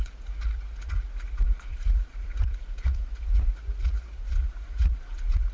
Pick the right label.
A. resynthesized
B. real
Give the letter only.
A